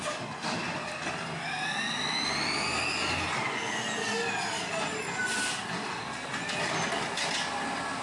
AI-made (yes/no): no